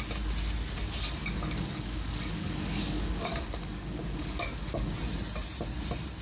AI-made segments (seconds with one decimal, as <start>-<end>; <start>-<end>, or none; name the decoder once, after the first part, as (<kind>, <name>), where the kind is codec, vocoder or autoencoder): 1.2-4.9 (codec, DAC)